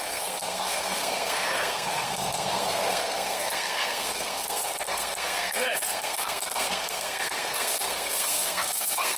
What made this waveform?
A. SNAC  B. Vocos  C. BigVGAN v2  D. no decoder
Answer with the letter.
A